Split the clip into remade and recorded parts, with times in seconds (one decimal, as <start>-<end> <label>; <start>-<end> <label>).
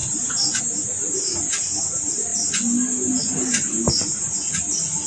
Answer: 0.0-5.1 recorded